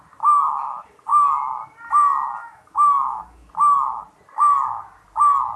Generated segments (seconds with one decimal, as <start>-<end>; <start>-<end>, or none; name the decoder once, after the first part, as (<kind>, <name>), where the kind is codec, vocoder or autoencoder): 2.4-3.5 (autoencoder, DAC-VAE)